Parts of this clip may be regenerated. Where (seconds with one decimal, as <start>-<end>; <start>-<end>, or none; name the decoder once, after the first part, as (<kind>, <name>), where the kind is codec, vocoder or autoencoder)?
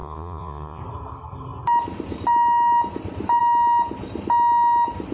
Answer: 0.0-0.8 (vocoder, Vocos)